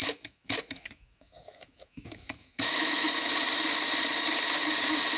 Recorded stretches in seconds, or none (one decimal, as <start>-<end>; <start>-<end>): 3.1-5.2